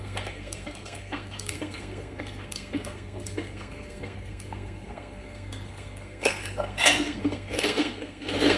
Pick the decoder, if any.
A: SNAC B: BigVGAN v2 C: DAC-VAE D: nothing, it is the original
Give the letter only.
A